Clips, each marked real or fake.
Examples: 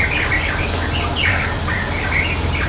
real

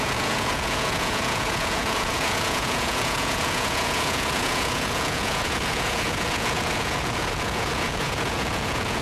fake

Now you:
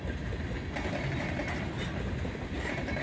real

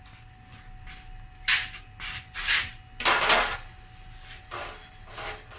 real